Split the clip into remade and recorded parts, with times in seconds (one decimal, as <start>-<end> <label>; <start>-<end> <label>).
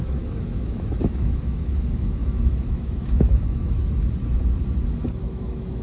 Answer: 0.0-3.8 remade; 3.8-5.2 recorded; 5.2-5.8 remade